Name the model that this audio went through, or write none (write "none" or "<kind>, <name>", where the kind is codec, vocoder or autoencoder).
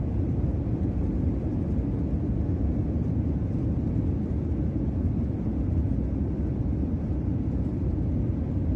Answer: none